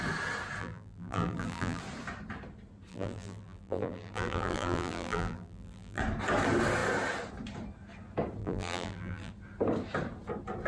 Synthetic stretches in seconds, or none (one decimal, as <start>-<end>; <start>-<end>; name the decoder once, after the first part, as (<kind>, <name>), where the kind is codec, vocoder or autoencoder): 0.6-1.8 (vocoder, BigVGAN v2); 2.9-6.0; 8.4-9.3